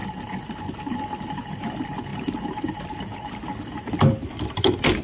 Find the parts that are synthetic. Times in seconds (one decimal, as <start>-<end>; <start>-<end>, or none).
none